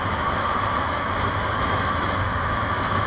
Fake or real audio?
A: fake